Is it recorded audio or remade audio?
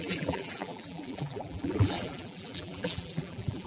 remade